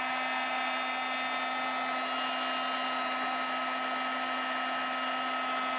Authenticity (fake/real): real